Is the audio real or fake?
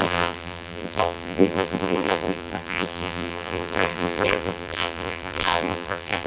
fake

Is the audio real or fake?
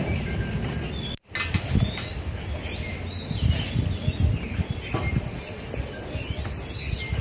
real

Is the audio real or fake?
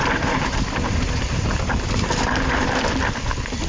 fake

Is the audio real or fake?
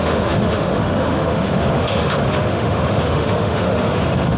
fake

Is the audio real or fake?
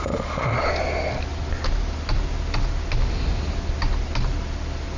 real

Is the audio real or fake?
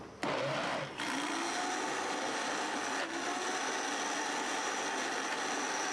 real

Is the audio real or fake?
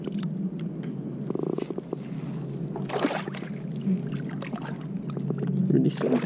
real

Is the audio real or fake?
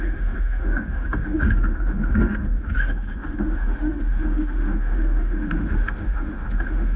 fake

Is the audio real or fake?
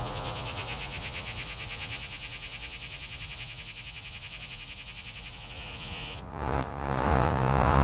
fake